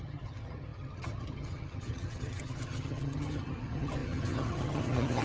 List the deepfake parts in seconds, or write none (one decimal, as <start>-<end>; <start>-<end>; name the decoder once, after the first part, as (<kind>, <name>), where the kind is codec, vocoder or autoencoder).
0.0-5.2 (vocoder, HiFi-GAN)